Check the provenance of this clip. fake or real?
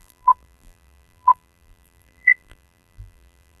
fake